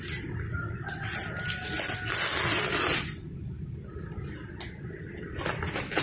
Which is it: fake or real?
real